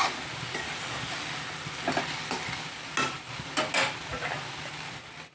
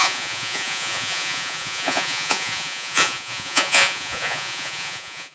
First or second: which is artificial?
second